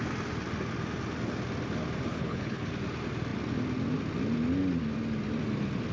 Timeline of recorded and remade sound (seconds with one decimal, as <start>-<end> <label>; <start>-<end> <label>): 0.0-2.1 recorded; 2.1-2.7 remade; 2.7-5.9 recorded